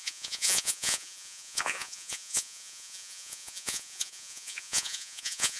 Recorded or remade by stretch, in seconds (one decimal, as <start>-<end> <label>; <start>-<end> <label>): 0.0-5.6 remade